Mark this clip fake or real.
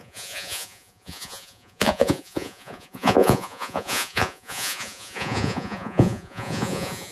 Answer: fake